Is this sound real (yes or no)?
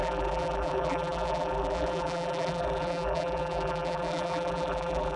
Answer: no